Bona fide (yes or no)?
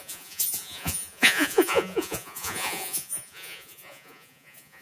no